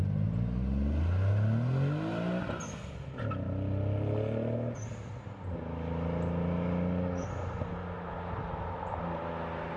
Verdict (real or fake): real